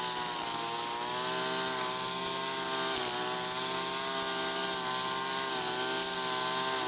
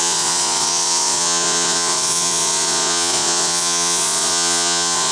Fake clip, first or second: second